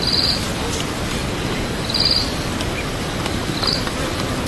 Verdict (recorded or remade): recorded